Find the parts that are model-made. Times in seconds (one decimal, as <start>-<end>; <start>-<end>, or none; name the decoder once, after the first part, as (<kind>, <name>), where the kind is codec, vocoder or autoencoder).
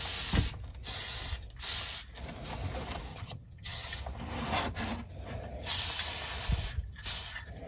3.1-3.9 (vocoder, HiFi-GAN)